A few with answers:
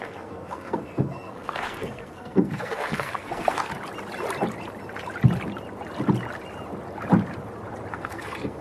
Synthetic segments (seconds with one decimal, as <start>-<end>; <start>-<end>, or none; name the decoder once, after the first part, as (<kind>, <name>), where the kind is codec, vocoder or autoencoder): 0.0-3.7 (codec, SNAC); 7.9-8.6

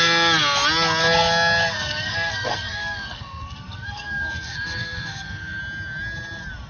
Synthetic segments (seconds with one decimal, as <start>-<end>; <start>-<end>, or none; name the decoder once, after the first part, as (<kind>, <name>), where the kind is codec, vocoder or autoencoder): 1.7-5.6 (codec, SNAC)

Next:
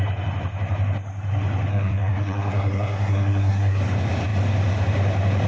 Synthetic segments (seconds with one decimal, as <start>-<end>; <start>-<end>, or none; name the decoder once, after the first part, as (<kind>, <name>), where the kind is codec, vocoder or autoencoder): 1.7-3.8 (codec, SNAC)

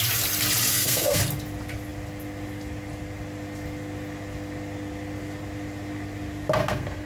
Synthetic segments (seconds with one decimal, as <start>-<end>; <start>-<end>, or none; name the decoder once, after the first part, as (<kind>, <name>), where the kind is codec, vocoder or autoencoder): 0.7-1.2 (codec, SNAC); 6.6-7.1

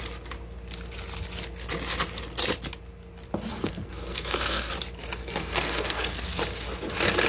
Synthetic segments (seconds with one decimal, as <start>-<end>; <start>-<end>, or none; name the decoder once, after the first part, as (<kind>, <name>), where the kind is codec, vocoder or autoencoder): 3.5-4.7 (codec, SNAC); 5.2-6.4

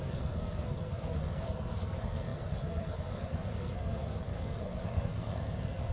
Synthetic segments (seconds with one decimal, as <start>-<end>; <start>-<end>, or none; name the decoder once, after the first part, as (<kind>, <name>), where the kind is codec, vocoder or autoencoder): 0.0-5.9 (codec, SNAC)

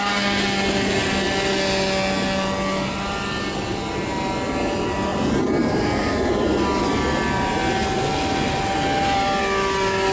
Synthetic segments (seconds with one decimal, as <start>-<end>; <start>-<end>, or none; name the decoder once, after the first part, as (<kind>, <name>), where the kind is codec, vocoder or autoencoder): none

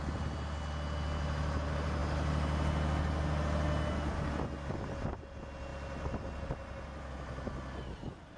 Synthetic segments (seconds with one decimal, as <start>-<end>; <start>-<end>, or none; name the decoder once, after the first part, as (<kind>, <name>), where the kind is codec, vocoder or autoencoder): none